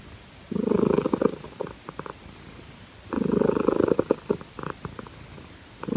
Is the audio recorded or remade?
recorded